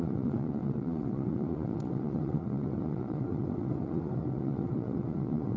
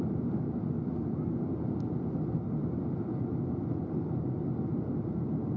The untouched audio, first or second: second